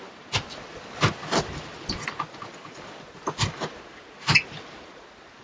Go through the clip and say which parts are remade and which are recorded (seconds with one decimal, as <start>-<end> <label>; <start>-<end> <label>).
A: 0.0-5.4 recorded